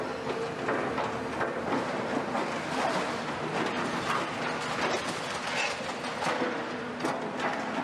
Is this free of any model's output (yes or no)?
yes